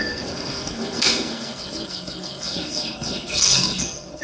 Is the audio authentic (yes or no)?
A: no